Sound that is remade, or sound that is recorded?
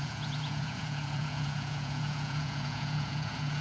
remade